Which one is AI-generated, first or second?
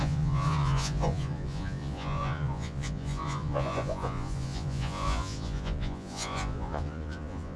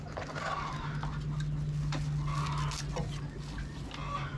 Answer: first